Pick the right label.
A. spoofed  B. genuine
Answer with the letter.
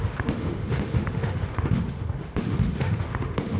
A